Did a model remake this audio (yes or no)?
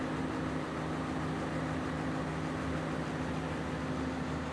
no